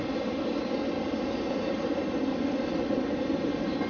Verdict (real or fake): real